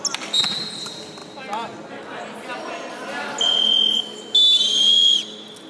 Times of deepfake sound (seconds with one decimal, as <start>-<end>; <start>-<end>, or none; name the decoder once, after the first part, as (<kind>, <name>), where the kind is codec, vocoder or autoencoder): none